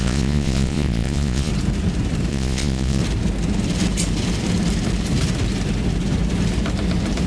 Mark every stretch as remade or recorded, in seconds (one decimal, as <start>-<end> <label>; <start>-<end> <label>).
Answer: 0.0-1.5 remade; 1.5-2.3 recorded; 2.3-3.0 remade; 3.0-7.3 recorded